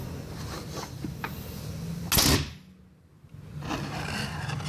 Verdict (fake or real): real